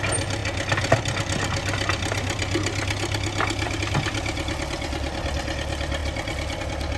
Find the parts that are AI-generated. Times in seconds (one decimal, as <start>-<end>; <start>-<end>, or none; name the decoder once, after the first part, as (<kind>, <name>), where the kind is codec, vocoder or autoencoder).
none